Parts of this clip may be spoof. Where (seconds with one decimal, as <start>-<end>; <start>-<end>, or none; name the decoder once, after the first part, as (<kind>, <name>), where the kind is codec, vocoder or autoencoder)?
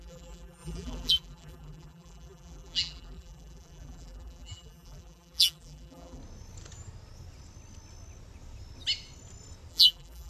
0.0-6.2 (vocoder, BigVGAN v2); 9.7-10.3